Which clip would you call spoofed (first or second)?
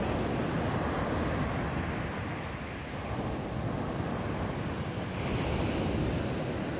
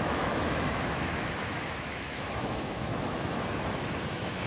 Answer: second